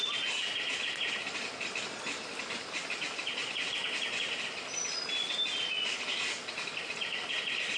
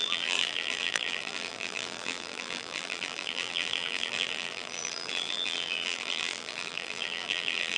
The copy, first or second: second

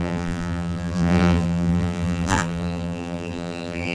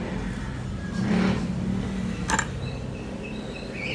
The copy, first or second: first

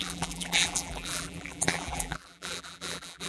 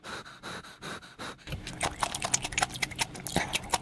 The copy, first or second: first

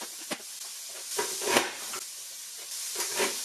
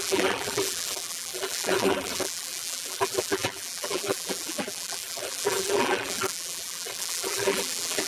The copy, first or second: second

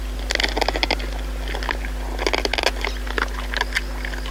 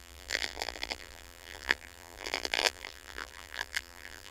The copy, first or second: second